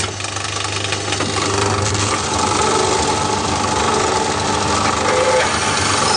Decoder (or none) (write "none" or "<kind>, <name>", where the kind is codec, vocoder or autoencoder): none